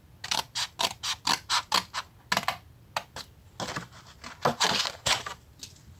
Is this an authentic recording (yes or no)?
yes